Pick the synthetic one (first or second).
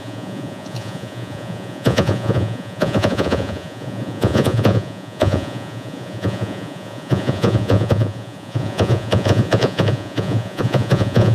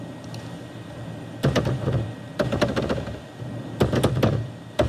first